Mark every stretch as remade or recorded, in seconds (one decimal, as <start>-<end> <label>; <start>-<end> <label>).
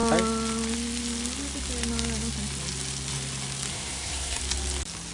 0.0-3.7 recorded; 3.7-4.4 remade; 4.4-5.1 recorded